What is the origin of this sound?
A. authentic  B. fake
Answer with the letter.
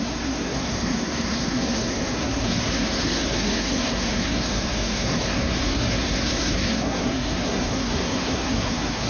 B